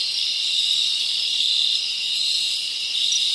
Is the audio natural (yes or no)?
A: yes